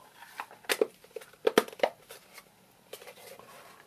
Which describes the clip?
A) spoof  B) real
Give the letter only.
B